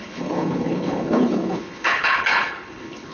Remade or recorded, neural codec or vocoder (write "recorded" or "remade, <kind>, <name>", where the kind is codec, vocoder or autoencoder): remade, codec, HILCodec